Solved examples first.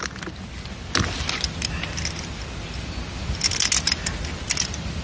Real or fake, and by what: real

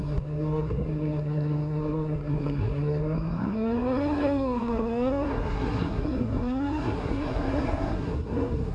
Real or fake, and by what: fake, codec, SNAC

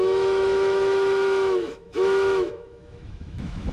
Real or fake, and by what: fake, autoencoder, DAC-VAE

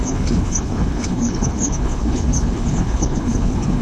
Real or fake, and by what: fake, codec, HILCodec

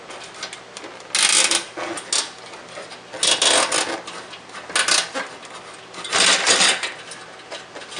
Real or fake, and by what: real